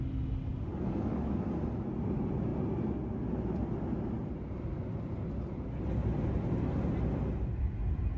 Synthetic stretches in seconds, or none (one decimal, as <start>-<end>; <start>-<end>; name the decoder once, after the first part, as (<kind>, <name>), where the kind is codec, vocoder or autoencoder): 0.7-1.3 (codec, DAC)